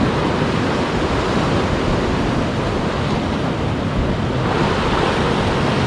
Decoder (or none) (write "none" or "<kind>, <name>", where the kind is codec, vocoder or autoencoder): none